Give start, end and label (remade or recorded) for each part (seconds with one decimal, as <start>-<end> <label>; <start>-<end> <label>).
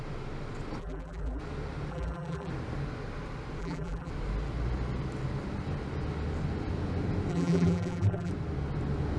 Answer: 0.0-0.8 recorded; 0.8-1.4 remade; 1.4-1.9 recorded; 1.9-2.5 remade; 2.5-3.6 recorded; 3.6-4.1 remade; 4.1-7.3 recorded; 7.3-8.3 remade; 8.3-9.2 recorded